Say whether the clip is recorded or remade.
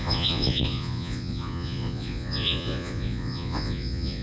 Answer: remade